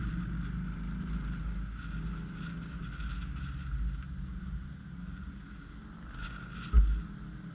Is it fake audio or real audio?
real